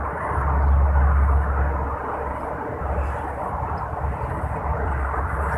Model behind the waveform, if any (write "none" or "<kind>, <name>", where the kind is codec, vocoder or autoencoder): none